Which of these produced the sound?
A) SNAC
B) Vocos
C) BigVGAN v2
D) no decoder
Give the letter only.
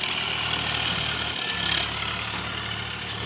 D